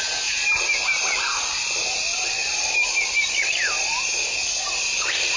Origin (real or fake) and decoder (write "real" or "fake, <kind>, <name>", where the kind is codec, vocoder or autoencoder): fake, vocoder, BigVGAN v2